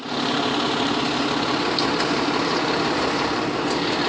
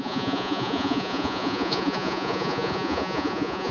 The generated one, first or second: second